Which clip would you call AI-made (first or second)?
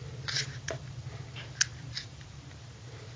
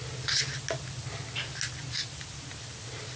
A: first